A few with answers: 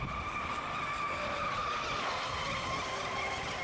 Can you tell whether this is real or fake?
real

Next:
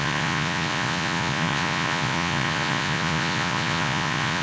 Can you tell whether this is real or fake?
fake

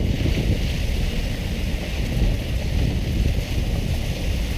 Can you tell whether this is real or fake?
real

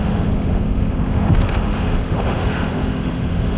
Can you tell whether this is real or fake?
fake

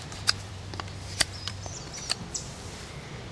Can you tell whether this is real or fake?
fake